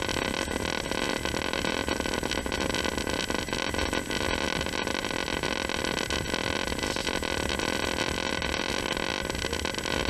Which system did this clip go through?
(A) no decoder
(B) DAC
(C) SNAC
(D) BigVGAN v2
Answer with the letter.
A